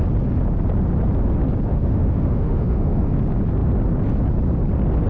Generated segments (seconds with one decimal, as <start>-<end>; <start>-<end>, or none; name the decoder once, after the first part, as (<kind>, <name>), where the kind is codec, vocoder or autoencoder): 1.7-3.1 (autoencoder, DAC-VAE)